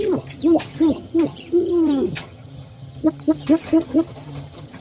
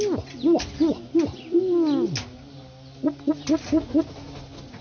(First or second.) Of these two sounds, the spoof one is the first